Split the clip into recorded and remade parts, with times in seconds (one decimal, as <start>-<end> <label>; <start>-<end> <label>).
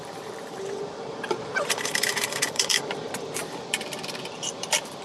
0.0-5.0 remade